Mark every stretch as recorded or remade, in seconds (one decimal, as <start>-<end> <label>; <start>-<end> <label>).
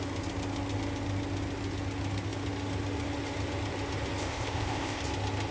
0.0-4.2 recorded; 4.2-5.0 remade; 5.0-5.5 recorded